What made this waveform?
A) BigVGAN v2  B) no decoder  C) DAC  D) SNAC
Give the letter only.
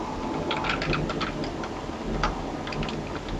B